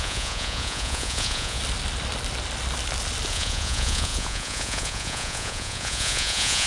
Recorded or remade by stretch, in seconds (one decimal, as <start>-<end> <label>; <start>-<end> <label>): 0.0-1.6 remade; 1.6-3.3 recorded; 3.3-6.7 remade